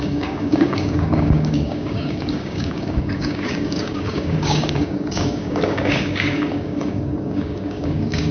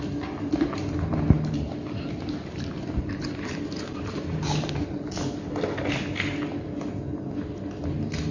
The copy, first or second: first